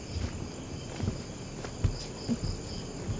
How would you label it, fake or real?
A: real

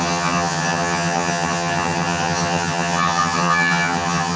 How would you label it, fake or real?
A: fake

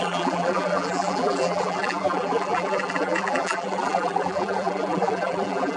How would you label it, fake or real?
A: fake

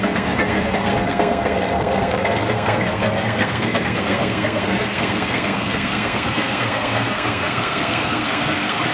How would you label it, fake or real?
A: fake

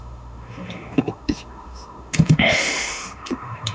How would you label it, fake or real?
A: fake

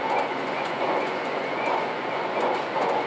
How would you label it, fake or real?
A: fake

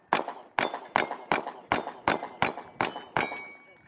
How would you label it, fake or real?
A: real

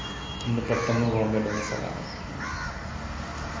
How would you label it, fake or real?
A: real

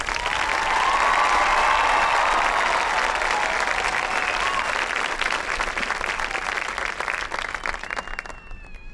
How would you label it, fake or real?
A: real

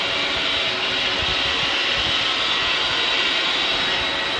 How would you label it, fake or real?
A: real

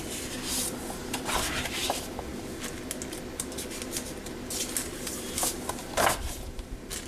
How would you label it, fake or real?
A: real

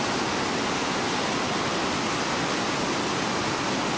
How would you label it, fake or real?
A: real